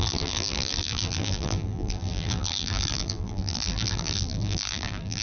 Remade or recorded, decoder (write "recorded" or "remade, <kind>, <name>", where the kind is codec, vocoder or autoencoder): remade, vocoder, BigVGAN v2